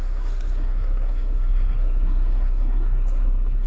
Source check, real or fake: fake